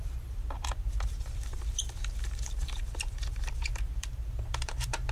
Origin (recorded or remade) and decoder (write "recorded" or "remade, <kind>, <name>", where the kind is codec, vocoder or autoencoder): remade, vocoder, BigVGAN v2